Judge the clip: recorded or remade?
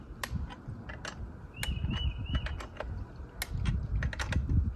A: recorded